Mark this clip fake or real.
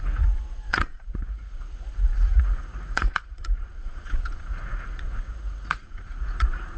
fake